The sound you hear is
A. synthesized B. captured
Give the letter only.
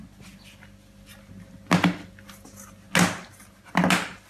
B